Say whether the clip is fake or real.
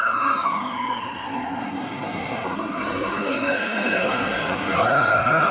fake